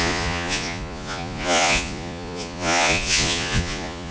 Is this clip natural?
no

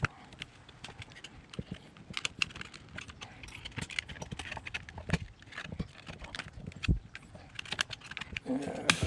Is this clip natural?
yes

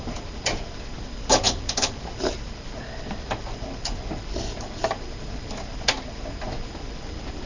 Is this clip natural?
yes